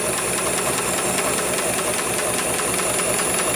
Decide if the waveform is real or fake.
real